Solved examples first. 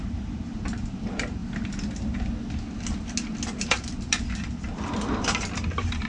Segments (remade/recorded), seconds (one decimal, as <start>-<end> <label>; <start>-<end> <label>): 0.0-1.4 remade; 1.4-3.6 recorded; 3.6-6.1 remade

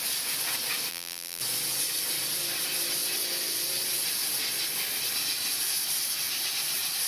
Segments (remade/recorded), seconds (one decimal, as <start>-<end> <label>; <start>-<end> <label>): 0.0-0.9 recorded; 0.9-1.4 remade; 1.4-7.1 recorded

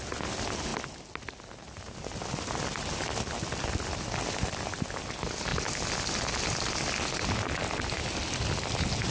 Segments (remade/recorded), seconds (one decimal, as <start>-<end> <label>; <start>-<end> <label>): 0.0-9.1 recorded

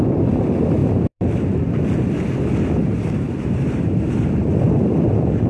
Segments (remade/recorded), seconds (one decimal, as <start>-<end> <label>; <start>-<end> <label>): 0.0-0.8 recorded; 0.8-1.4 remade; 1.4-2.8 recorded; 2.8-4.1 remade; 4.1-5.5 recorded

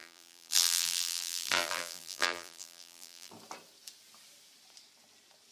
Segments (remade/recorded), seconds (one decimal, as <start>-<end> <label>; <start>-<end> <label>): 0.0-3.3 remade; 3.3-5.5 recorded

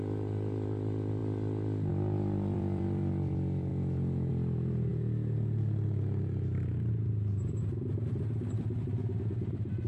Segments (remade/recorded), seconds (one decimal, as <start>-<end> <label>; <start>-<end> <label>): 0.0-1.2 remade; 1.2-1.9 recorded; 1.9-4.9 remade; 4.9-6.9 recorded; 6.9-9.9 remade

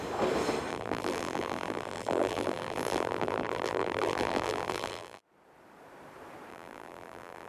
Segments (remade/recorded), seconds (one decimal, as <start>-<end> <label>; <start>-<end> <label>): 0.0-0.7 recorded; 0.7-5.2 remade; 5.2-6.5 recorded; 6.5-7.5 remade